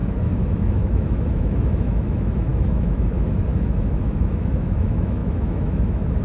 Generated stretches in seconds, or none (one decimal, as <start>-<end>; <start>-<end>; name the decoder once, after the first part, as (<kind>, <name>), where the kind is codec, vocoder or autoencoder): 0.0-6.2 (autoencoder, DAC-VAE)